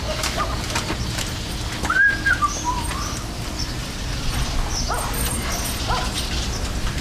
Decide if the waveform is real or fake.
real